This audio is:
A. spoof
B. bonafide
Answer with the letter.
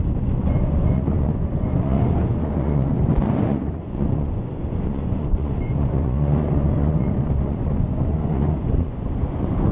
A